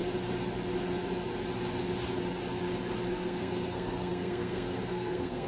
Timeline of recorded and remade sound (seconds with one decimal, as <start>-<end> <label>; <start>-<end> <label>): 0.0-3.1 recorded; 3.1-5.5 remade

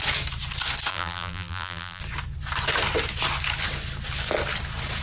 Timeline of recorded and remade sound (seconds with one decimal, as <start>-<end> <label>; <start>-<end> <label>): 0.0-0.9 recorded; 0.9-2.0 remade; 2.0-5.0 recorded

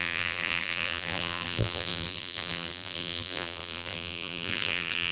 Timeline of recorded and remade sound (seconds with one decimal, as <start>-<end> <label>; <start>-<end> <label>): 0.0-5.1 remade